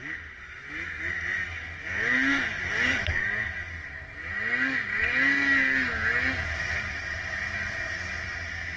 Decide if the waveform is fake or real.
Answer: real